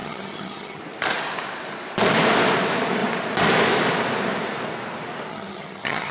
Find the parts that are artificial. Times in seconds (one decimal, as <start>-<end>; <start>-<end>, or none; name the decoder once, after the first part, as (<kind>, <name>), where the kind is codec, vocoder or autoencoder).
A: 0.0-0.8 (vocoder, HiFi-GAN); 5.3-6.1